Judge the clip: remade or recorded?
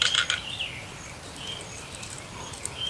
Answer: recorded